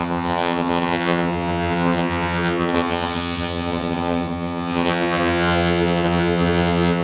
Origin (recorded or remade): remade